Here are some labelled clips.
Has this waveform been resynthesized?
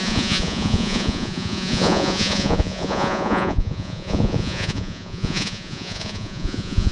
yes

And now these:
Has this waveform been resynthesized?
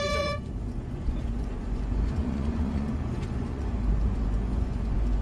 yes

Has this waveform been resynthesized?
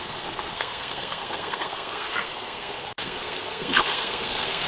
yes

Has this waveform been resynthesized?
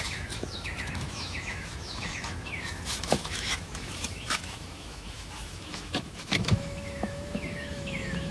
yes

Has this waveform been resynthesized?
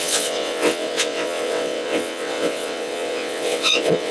yes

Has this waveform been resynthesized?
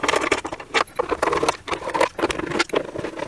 no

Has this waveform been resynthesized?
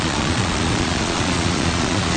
yes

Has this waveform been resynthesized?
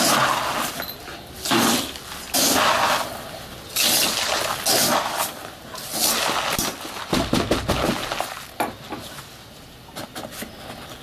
no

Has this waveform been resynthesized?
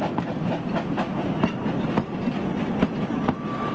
no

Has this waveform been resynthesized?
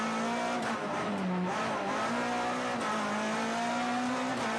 no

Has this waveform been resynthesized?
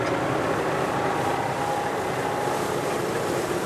no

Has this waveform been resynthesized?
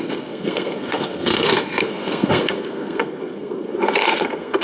yes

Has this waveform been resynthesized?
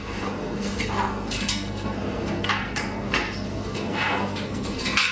yes